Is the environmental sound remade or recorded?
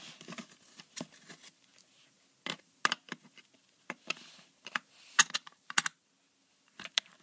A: recorded